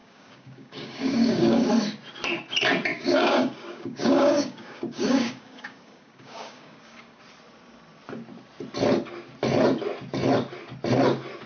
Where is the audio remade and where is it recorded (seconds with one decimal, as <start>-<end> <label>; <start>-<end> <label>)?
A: 0.0-1.7 remade; 1.7-2.9 recorded; 2.9-7.2 remade; 7.2-11.5 recorded